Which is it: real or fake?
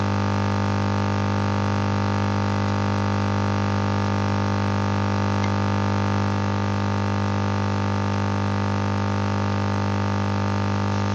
real